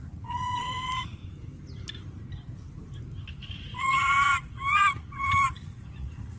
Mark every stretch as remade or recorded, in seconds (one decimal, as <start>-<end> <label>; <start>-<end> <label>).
0.0-1.2 remade; 1.2-3.4 recorded; 3.4-6.4 remade